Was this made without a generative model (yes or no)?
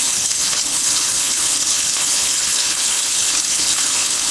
no